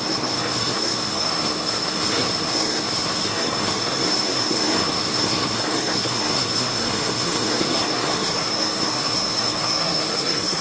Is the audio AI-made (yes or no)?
yes